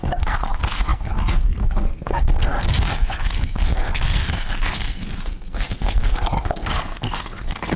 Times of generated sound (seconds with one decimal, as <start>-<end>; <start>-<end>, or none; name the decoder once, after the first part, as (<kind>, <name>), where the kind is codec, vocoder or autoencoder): 0.0-7.8 (codec, SNAC)

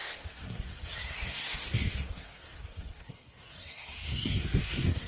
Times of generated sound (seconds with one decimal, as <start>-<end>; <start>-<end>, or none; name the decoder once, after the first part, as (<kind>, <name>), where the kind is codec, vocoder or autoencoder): 0.0-5.1 (codec, SNAC)

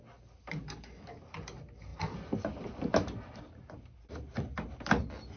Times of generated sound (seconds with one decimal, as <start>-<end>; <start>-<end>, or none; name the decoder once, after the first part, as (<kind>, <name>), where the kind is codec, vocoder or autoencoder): none

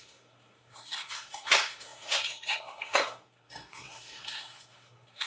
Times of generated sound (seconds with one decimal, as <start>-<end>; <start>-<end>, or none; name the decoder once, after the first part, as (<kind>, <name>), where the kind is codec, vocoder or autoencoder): 0.0-5.3 (codec, SNAC)

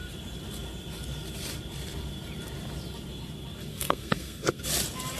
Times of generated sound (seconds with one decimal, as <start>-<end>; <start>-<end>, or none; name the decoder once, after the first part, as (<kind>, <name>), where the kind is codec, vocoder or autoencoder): 3.7-4.7 (codec, SNAC)

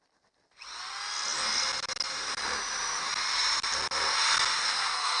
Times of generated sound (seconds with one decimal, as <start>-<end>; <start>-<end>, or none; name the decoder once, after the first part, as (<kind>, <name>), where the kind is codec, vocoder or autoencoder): 4.6-5.2 (codec, SNAC)

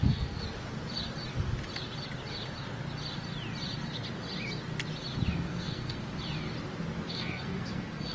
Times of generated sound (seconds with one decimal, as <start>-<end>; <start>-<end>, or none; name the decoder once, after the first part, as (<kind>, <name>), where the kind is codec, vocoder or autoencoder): 0.0-0.4 (codec, SNAC); 5.3-6.0; 7.1-8.1

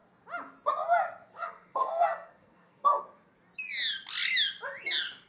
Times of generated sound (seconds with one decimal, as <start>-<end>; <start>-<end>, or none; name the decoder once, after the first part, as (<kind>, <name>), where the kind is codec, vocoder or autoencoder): 1.3-3.0 (codec, SNAC)